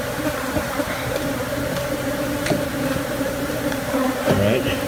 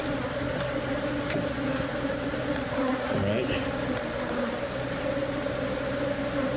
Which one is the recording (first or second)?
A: second